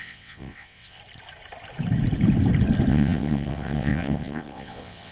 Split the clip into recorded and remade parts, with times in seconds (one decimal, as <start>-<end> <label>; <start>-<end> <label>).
0.0-1.0 remade; 1.0-2.9 recorded; 2.9-5.1 remade